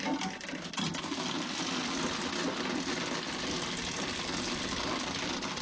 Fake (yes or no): no